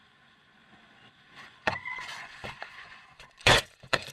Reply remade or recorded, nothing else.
remade